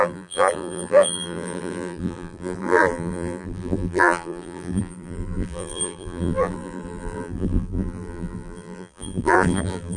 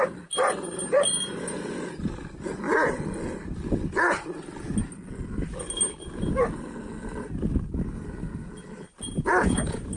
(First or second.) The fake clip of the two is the first